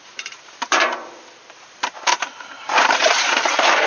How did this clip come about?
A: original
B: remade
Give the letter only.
B